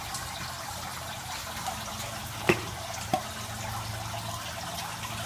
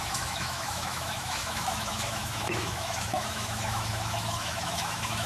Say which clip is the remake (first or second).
second